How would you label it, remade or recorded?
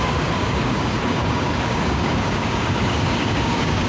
remade